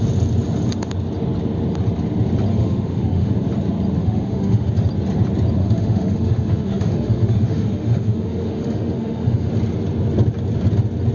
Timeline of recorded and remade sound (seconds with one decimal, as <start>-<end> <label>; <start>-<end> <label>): 0.0-2.5 recorded; 2.5-3.3 remade; 3.3-4.0 recorded; 4.0-4.7 remade; 4.7-5.6 recorded; 5.6-9.5 remade; 9.5-11.1 recorded

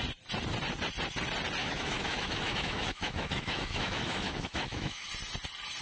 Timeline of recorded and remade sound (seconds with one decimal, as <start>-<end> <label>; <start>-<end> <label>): 0.0-1.6 recorded; 1.6-5.1 remade; 5.1-5.8 recorded

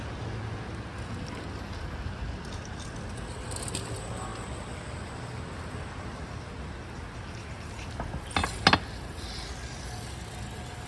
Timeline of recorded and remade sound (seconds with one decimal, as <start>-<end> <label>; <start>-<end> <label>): 0.0-10.9 recorded